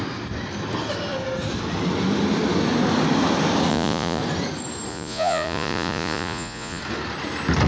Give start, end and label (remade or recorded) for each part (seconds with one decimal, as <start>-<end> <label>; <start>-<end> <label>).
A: 0.0-3.7 recorded; 3.7-4.2 remade; 4.2-4.9 recorded; 4.9-6.8 remade; 6.8-7.7 recorded